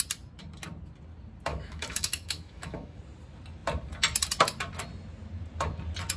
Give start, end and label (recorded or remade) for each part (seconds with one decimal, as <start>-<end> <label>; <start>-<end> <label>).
0.0-1.5 recorded; 1.5-3.0 remade; 3.0-6.2 recorded